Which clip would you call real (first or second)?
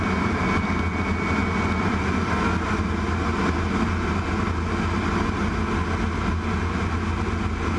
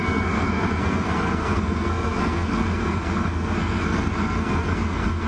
first